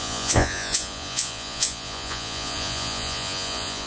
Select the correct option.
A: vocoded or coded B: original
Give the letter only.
A